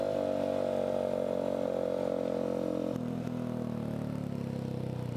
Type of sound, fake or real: real